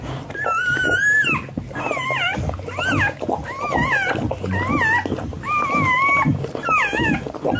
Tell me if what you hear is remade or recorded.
recorded